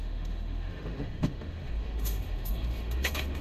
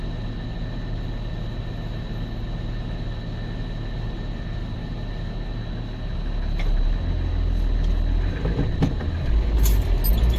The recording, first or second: second